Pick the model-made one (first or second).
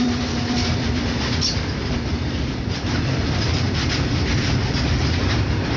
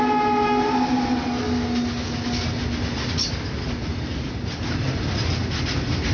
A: first